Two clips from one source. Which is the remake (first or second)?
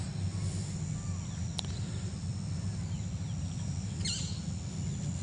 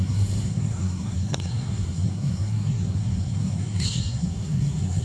second